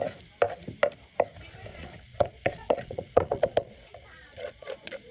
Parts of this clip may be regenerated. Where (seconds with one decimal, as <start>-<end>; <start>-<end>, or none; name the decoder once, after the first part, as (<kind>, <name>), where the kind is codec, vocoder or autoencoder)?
1.7-5.1 (vocoder, Vocos)